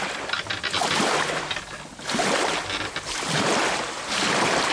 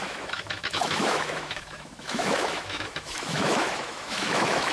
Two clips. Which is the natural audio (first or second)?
first